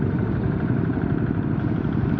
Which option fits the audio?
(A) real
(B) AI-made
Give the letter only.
B